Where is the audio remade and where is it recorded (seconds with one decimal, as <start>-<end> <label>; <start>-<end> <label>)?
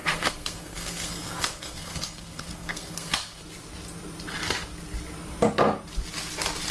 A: 0.0-3.4 remade; 3.4-6.7 recorded